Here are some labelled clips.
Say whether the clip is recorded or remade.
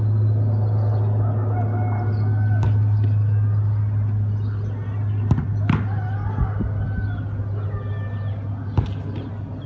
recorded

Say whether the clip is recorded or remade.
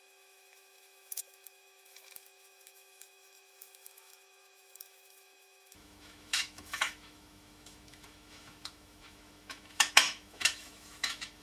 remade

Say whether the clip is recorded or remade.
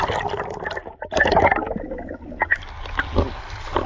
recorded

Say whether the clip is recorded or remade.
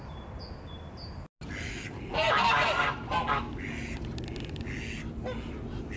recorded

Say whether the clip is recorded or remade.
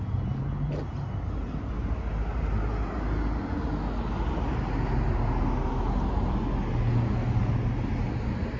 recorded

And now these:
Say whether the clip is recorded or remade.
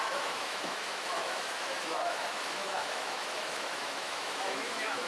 remade